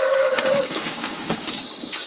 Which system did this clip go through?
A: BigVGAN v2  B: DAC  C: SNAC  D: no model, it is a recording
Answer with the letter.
B